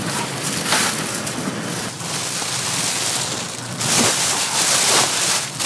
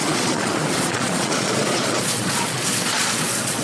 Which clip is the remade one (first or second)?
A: second